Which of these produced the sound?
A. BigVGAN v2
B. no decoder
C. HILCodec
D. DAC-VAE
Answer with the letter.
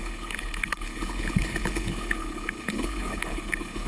C